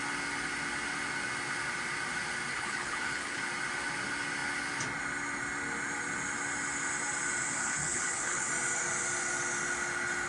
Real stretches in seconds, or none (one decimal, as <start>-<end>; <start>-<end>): 0.0-2.5; 3.4-7.6; 8.5-10.3